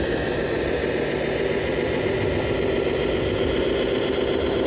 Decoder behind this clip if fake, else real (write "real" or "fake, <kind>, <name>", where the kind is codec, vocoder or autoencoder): real